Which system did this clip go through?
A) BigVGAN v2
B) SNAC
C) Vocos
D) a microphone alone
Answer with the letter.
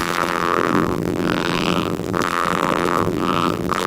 A